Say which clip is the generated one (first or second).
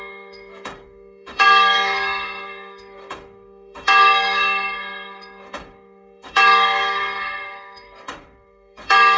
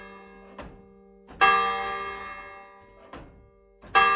first